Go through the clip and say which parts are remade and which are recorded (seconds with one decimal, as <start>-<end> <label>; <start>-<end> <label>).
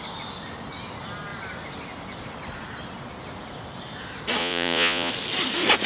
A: 0.0-4.4 recorded; 4.4-5.1 remade; 5.1-5.9 recorded